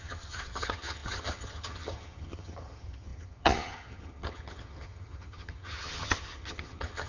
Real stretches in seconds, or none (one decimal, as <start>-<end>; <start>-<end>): none